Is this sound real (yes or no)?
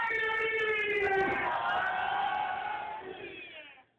yes